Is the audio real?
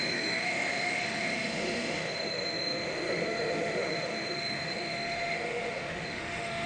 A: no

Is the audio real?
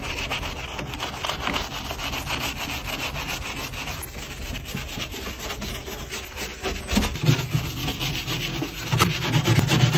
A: yes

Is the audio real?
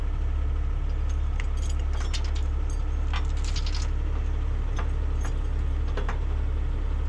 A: yes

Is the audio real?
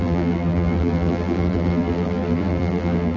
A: no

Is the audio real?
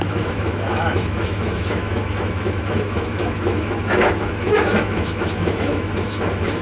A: no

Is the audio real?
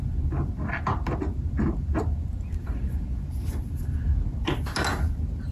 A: yes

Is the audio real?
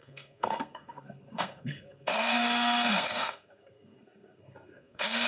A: no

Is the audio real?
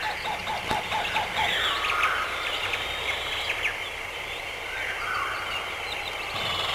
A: yes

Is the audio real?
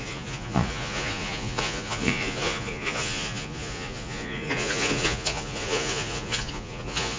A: no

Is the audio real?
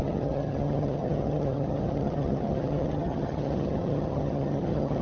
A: no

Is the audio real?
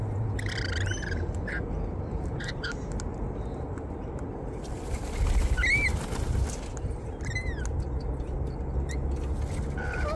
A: yes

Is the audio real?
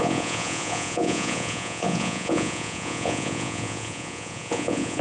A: no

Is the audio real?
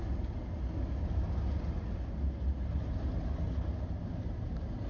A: yes